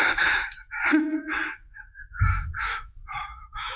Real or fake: fake